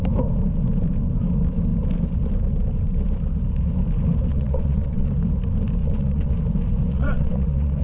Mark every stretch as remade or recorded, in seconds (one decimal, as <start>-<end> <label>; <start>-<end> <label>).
0.0-4.3 recorded; 4.3-5.1 remade; 5.1-5.8 recorded; 5.8-6.3 remade; 6.3-6.9 recorded; 6.9-7.8 remade